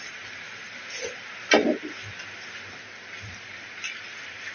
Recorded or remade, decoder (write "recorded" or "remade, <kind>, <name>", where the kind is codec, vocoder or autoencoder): recorded